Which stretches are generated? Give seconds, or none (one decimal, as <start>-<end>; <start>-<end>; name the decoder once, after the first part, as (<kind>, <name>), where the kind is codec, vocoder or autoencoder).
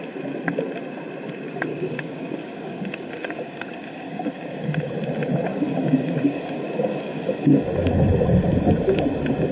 1.7-4.9 (codec, DAC); 5.5-7.6